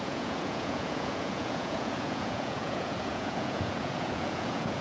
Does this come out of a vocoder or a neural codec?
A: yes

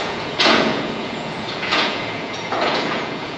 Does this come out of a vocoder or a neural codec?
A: yes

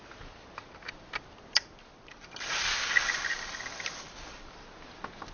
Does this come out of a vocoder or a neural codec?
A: no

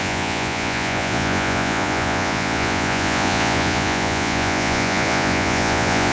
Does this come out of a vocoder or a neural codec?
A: yes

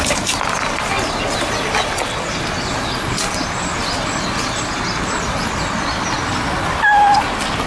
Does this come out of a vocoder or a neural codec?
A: no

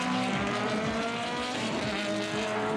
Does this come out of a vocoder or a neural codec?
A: no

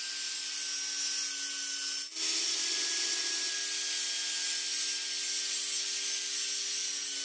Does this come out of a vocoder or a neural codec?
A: no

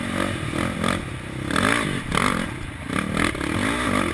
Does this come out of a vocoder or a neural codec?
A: no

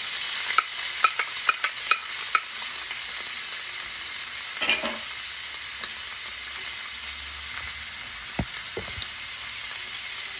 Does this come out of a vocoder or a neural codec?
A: no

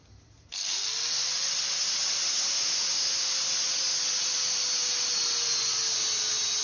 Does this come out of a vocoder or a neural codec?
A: no